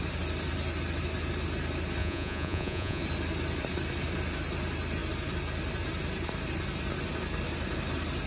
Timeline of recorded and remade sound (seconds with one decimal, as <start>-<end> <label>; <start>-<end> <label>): 0.0-2.0 recorded; 2.0-3.0 remade; 3.0-8.3 recorded